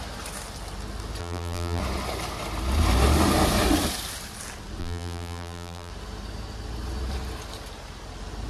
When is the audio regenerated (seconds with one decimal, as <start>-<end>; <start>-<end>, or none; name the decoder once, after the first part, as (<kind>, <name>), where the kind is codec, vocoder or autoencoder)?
1.2-1.8 (vocoder, BigVGAN v2); 4.8-5.9